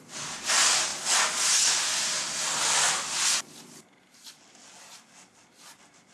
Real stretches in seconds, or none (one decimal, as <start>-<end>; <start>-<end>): 0.0-6.1